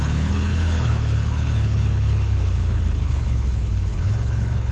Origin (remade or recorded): remade